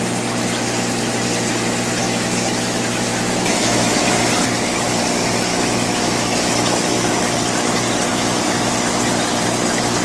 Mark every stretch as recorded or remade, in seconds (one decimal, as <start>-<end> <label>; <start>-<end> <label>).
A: 0.0-2.0 recorded; 2.0-4.3 remade; 4.3-5.5 recorded; 5.5-7.2 remade; 7.2-8.1 recorded; 8.1-8.7 remade; 8.7-10.0 recorded